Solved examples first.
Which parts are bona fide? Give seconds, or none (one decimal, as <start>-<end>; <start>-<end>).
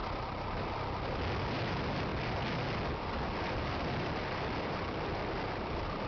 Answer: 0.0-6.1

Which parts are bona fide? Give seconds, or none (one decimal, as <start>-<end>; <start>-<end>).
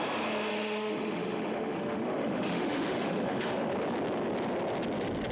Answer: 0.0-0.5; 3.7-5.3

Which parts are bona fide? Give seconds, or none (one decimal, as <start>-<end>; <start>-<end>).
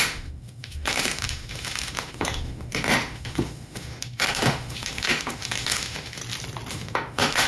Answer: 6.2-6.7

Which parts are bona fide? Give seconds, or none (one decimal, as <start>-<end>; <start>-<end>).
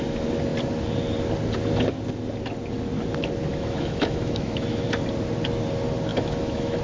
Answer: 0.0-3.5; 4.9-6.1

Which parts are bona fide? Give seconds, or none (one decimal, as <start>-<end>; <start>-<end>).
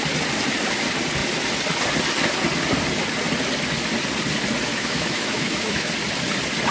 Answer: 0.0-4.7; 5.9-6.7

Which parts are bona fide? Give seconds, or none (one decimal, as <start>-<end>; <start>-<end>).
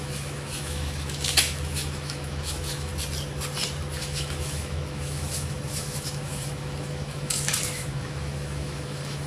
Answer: 2.9-4.0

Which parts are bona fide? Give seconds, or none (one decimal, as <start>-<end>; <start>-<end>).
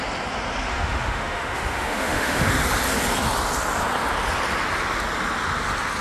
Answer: 0.0-0.7; 2.5-6.0